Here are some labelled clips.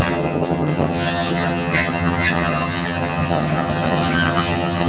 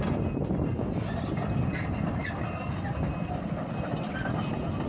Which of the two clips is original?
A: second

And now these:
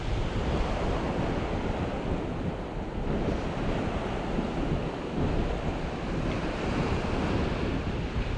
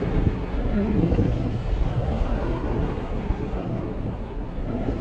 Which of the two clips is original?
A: first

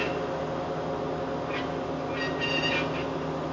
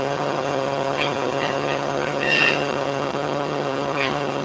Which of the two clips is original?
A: first